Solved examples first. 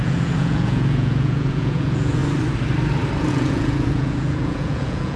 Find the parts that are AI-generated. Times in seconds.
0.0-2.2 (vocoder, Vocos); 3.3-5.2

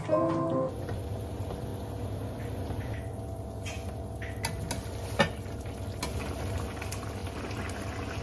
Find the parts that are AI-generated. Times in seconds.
none

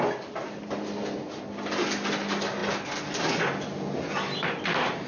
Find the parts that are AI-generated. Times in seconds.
none